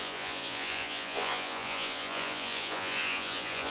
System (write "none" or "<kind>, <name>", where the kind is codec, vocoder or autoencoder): vocoder, Vocos